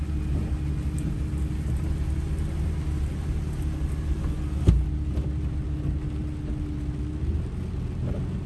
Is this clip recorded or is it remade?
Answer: recorded